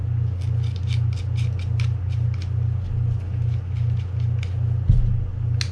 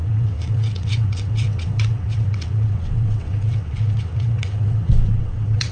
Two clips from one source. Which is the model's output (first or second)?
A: second